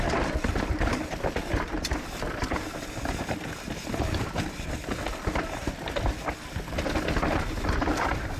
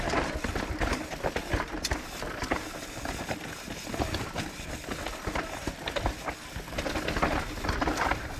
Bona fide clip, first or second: second